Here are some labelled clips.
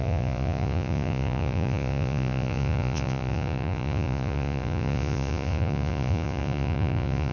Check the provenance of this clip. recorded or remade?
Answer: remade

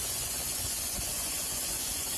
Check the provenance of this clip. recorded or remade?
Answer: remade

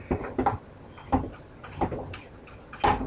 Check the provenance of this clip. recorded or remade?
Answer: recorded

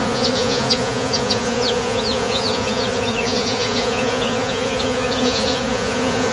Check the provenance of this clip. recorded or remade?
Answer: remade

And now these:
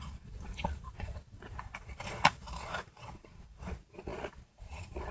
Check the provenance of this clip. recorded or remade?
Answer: remade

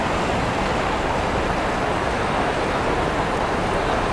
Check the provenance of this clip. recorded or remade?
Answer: recorded